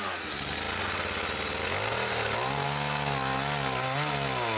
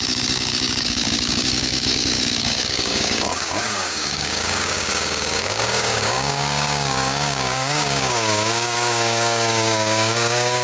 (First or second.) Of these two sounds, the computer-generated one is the second